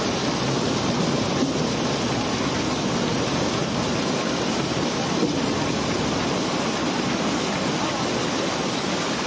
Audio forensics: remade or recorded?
remade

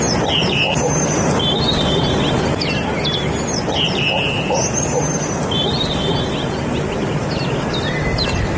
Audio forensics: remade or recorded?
recorded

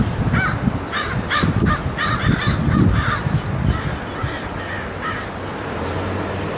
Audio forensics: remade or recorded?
recorded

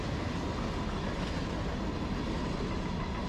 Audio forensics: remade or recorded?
recorded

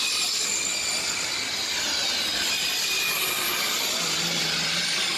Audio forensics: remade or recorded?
recorded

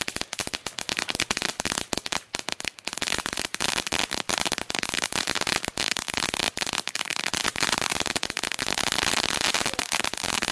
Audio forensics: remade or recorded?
remade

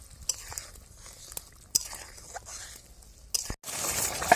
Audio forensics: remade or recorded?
recorded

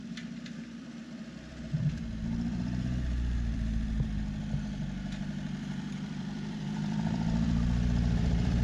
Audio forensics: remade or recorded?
remade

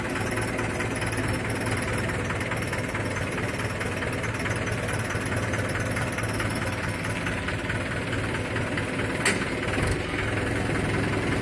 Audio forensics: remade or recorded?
recorded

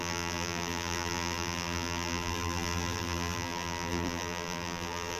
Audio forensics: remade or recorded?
remade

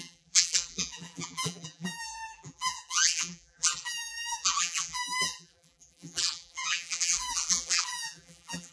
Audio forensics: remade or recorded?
remade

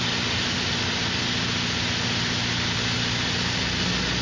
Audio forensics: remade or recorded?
recorded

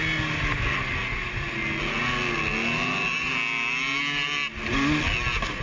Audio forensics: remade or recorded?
recorded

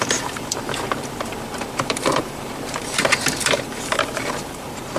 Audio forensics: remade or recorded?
remade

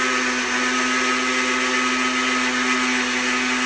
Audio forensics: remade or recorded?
recorded